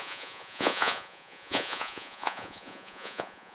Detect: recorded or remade remade